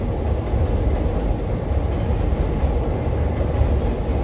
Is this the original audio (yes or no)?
yes